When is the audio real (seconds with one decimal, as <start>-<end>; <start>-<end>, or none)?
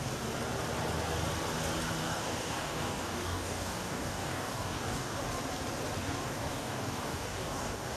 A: 0.0-2.0; 5.2-6.0